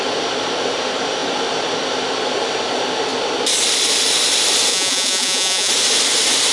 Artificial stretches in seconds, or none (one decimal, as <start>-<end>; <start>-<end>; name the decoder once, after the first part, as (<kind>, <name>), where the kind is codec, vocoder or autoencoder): 4.7-5.7 (vocoder, Vocos)